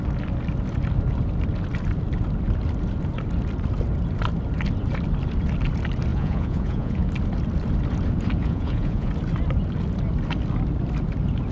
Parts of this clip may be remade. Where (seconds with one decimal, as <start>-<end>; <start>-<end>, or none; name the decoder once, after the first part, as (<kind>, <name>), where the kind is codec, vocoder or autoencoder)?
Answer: 6.1-7.1 (vocoder, Vocos); 8.4-9.1